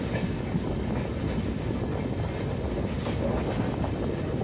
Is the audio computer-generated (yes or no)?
no